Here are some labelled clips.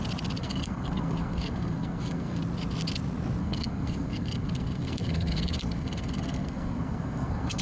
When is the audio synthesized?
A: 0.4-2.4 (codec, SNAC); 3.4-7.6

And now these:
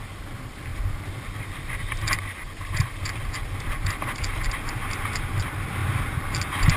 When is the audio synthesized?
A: none

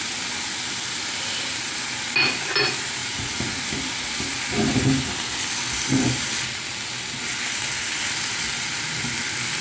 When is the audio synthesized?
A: 3.0-3.6 (vocoder, Vocos)

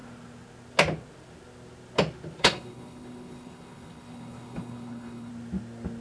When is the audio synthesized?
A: 2.4-5.3 (codec, HILCodec)

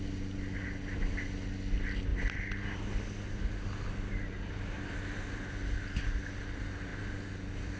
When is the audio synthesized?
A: none

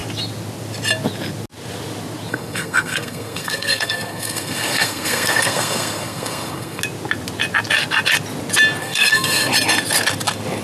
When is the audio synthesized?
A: 2.3-6.8 (codec, SNAC); 8.8-9.5

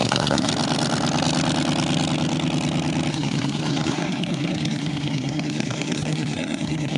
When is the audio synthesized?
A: 0.0-0.5 (codec, SNAC); 3.1-7.0